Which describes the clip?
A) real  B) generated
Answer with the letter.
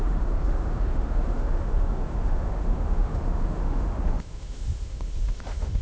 B